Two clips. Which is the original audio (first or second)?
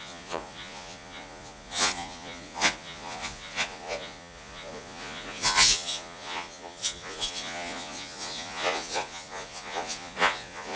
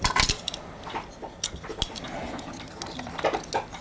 second